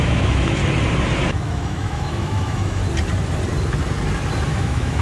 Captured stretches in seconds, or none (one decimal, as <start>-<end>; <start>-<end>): 0.6-1.3; 2.8-4.5